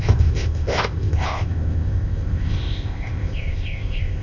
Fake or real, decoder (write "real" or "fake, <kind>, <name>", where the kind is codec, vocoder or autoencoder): fake, codec, ZipCodec